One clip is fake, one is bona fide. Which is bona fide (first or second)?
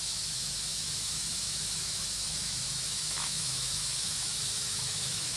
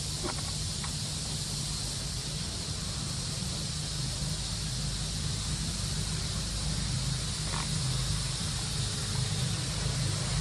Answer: second